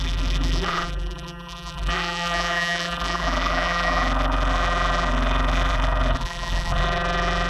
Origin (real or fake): fake